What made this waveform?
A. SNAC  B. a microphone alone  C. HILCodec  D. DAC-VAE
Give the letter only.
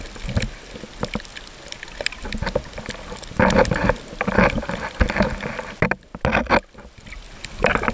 B